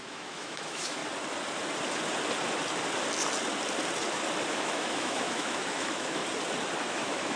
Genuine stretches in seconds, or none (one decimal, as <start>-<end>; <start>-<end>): 1.0-4.5; 6.2-6.8